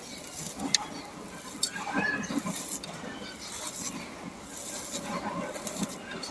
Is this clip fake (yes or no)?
no